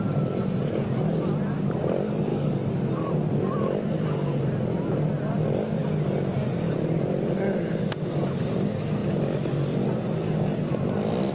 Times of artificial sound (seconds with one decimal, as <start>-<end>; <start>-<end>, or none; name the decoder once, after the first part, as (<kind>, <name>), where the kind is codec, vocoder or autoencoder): 2.3-3.1 (codec, DAC)